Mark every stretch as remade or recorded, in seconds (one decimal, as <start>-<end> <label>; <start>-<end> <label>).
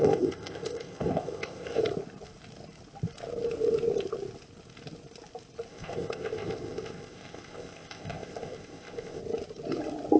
0.0-1.8 remade; 1.8-5.7 recorded; 5.7-9.2 remade; 9.2-10.2 recorded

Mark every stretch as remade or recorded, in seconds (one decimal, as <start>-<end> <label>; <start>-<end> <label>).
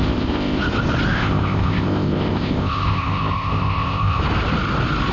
0.0-0.6 remade; 0.6-1.1 recorded; 1.1-4.2 remade; 4.2-5.1 recorded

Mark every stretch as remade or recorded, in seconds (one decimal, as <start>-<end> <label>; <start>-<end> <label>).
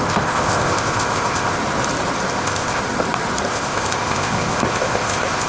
0.0-1.6 remade; 1.6-2.3 recorded; 2.3-2.8 remade; 2.8-3.5 recorded; 3.5-5.5 remade